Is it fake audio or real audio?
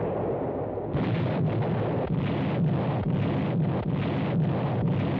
real